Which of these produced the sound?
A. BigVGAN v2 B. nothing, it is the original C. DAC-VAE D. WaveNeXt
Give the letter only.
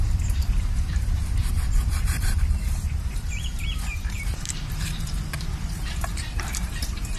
A